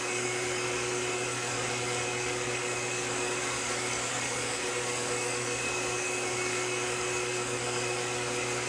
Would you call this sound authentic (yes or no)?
no